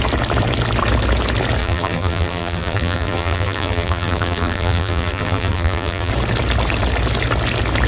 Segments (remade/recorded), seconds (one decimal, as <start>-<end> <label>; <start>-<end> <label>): 0.0-1.6 recorded; 1.6-6.1 remade; 6.1-7.9 recorded